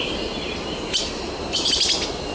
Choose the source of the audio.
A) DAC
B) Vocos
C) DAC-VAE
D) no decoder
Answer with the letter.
D